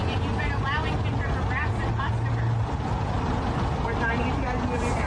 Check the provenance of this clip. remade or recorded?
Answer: recorded